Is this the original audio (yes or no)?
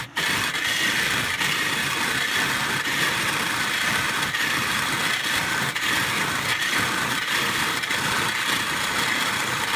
no